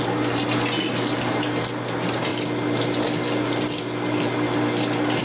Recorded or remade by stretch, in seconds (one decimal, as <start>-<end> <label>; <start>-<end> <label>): 0.0-5.2 recorded

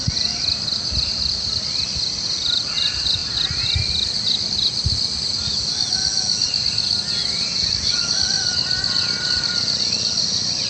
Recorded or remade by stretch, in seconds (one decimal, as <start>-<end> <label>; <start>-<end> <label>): 0.0-10.7 recorded

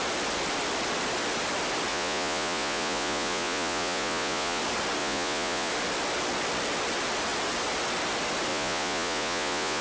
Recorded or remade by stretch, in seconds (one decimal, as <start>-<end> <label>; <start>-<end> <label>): 0.0-1.9 recorded; 1.9-4.6 remade; 4.6-5.0 recorded; 5.0-5.7 remade; 5.7-8.5 recorded; 8.5-9.8 remade

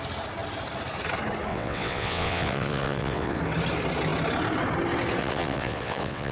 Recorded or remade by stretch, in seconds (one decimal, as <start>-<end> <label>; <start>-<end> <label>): 0.0-1.5 recorded; 1.5-3.4 remade; 3.4-5.2 recorded; 5.2-6.3 remade

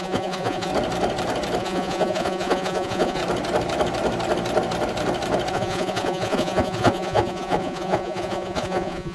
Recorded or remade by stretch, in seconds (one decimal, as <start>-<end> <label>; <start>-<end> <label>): 0.0-0.7 remade; 0.7-1.6 recorded; 1.6-3.2 remade; 3.2-5.5 recorded; 5.5-9.1 remade

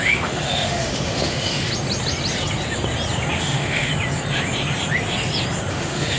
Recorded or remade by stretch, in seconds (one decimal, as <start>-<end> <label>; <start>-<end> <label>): 0.0-1.7 remade; 1.7-3.4 recorded; 3.4-3.9 remade; 3.9-5.7 recorded; 5.7-6.2 remade